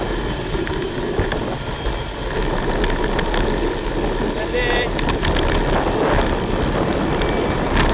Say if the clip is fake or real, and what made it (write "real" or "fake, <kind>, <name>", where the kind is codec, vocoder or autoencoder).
real